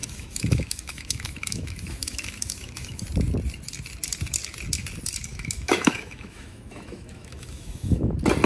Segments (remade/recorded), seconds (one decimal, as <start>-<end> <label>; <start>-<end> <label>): 0.0-3.0 remade; 3.0-5.3 recorded; 5.3-8.1 remade; 8.1-8.5 recorded